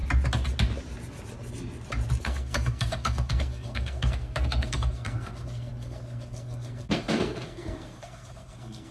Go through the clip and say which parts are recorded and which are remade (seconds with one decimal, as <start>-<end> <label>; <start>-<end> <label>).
0.0-2.2 recorded; 2.2-8.9 remade